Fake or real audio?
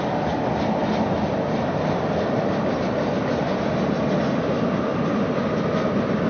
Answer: real